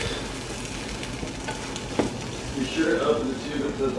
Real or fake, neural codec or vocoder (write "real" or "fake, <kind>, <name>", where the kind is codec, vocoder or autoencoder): real